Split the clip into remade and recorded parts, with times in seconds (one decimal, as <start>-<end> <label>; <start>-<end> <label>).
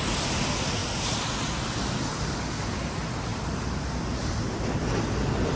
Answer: 0.0-3.3 recorded; 3.3-4.3 remade; 4.3-5.6 recorded